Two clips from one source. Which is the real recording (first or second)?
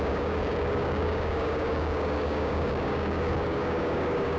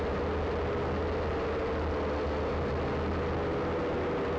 second